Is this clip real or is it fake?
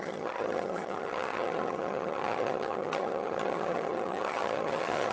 fake